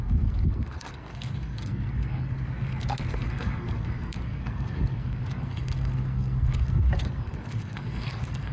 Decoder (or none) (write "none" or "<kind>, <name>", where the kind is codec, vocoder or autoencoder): codec, SNAC